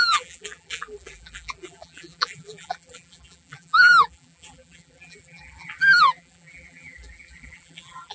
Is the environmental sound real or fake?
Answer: fake